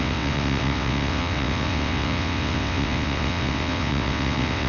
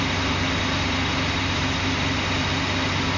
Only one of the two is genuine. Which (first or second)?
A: second